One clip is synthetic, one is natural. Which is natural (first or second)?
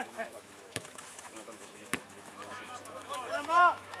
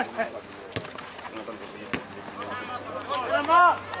second